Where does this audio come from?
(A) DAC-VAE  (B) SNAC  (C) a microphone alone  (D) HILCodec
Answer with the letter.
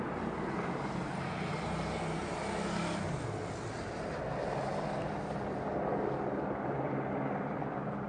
C